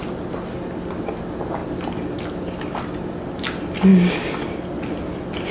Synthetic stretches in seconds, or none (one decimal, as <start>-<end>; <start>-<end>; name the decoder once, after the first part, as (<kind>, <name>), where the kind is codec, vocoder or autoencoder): none

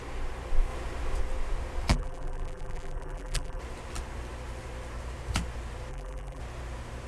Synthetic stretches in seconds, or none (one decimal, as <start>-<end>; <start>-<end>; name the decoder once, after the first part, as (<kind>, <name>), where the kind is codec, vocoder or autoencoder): 1.9-3.6 (vocoder, BigVGAN v2); 5.9-6.4